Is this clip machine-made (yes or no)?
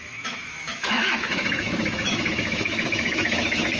yes